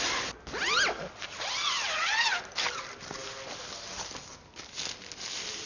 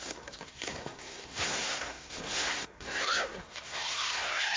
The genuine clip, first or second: first